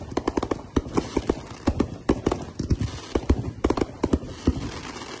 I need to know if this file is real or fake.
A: real